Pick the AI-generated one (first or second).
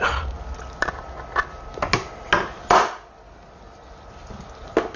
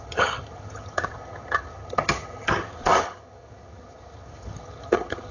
second